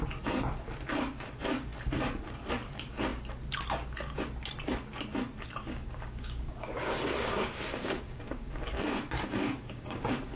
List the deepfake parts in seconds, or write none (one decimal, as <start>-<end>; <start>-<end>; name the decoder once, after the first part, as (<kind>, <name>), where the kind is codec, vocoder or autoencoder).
5.6-10.4 (codec, DAC)